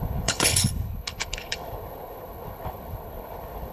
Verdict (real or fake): fake